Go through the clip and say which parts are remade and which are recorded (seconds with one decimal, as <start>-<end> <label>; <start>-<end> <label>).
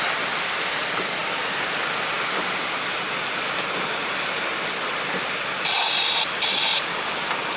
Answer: 0.0-1.2 remade; 1.2-5.8 recorded; 5.8-7.6 remade